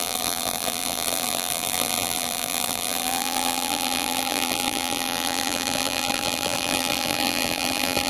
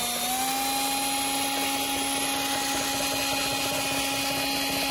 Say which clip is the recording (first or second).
second